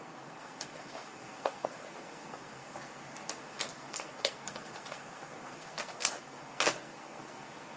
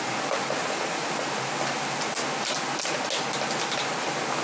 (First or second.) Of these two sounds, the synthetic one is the first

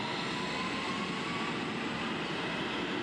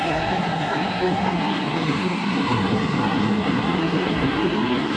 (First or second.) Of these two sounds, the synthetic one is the second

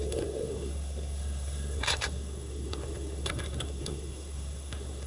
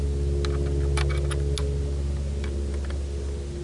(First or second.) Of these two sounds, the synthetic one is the first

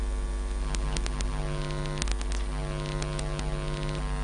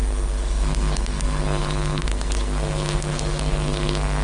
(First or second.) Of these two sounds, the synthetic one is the second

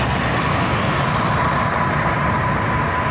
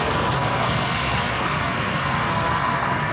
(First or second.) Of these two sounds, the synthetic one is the second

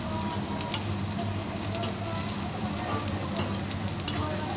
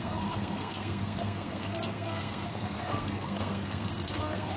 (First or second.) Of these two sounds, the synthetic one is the second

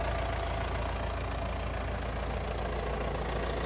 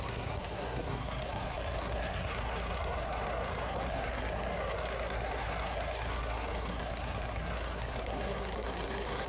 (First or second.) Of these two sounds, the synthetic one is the second